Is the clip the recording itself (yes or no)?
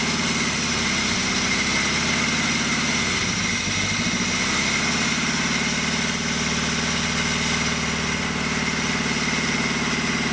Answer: yes